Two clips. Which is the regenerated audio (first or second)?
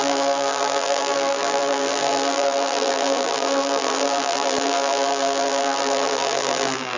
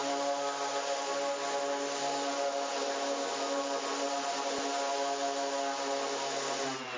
first